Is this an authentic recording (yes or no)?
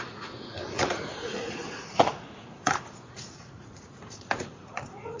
no